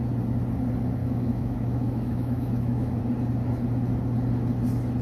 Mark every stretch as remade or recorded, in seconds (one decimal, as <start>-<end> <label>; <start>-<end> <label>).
0.0-1.0 recorded; 1.0-3.0 remade; 3.0-5.0 recorded